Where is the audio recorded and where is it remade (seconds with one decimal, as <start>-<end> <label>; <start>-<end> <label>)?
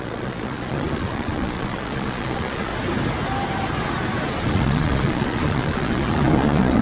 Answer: 0.0-2.7 remade; 2.7-4.5 recorded; 4.5-6.8 remade